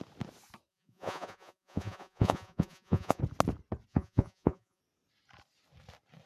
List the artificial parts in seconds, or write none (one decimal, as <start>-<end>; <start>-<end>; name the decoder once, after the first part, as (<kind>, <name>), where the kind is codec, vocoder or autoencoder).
0.7-3.2 (vocoder, Vocos); 3.9-4.8